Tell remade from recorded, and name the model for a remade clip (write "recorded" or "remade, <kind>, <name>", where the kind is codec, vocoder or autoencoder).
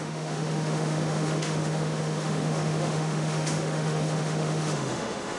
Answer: remade, autoencoder, DAC-VAE